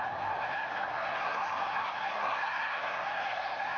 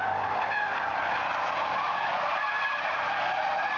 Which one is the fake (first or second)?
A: first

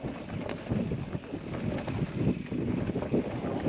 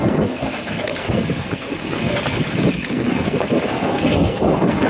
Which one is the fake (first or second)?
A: second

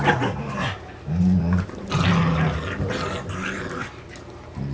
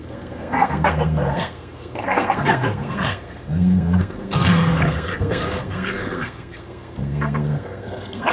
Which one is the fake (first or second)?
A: second